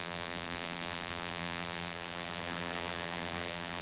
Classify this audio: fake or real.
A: fake